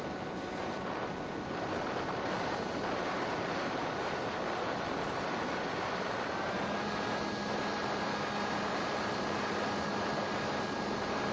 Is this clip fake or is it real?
real